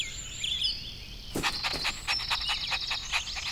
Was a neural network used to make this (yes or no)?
no